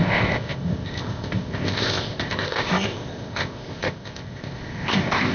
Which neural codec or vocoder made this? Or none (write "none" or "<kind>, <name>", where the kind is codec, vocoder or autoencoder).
codec, ZipCodec